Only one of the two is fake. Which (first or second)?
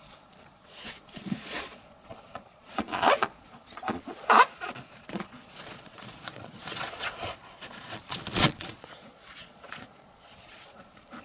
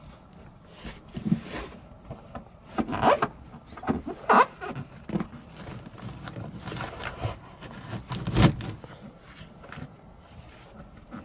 first